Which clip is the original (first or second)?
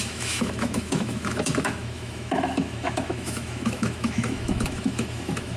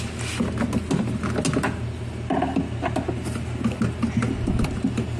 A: second